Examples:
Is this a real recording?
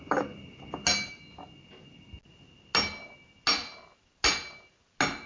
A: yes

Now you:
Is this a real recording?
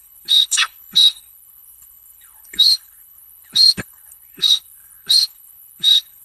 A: no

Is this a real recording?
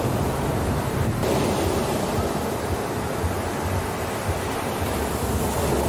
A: yes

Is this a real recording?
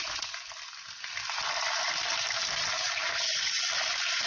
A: yes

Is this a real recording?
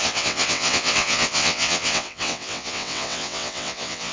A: no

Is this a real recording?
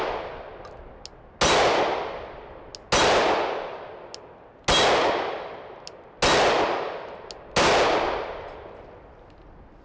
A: yes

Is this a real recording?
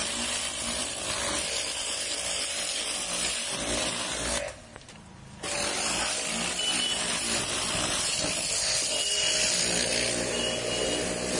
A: yes